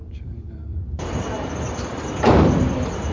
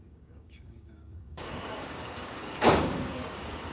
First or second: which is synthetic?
second